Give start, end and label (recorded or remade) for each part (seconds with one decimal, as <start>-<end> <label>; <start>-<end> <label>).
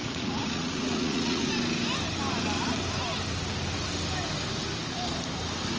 0.0-1.5 remade; 1.5-5.8 recorded